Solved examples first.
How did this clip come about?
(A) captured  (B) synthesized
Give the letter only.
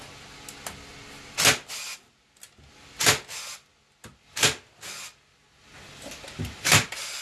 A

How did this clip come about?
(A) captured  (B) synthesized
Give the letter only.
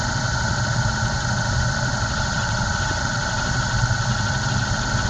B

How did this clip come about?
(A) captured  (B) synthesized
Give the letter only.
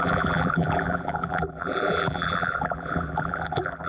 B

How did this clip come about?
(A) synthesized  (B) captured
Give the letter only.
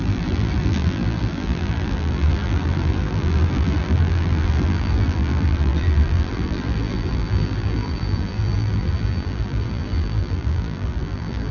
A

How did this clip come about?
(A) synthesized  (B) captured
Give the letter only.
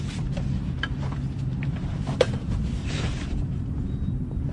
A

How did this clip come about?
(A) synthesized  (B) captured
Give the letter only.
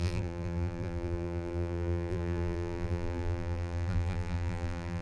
A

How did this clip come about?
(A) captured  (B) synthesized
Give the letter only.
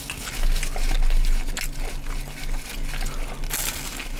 A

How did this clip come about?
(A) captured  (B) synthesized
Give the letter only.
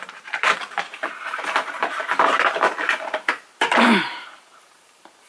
B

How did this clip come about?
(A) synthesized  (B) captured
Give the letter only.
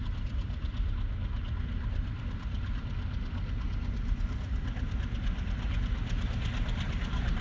B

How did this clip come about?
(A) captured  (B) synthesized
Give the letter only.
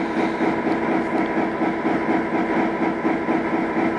A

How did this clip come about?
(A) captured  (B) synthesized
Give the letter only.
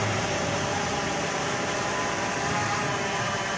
B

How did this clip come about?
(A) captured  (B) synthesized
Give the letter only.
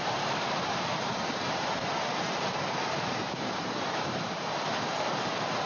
B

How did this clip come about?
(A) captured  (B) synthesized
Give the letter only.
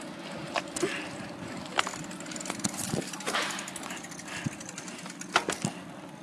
A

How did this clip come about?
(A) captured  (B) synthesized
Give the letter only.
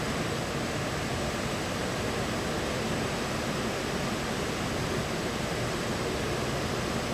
A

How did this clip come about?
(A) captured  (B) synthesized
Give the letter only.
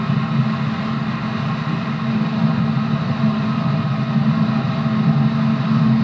A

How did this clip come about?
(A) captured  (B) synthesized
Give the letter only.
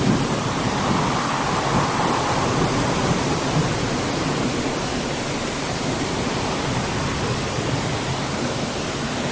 A